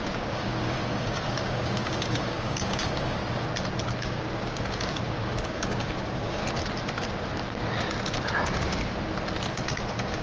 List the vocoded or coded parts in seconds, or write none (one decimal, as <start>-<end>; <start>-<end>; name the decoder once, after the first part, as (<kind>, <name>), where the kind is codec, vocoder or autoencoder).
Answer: 0.0-3.2 (codec, DAC); 4.0-6.4; 9.5-10.2